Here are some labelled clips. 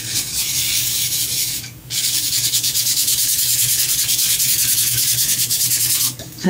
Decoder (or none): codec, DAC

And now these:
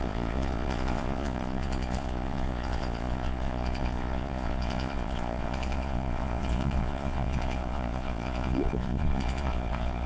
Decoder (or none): vocoder, Vocos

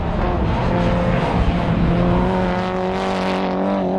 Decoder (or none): none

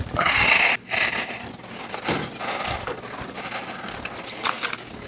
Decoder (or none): none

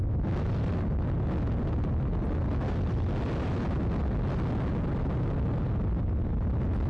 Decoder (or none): none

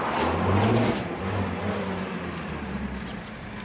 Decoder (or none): none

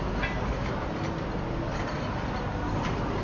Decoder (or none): none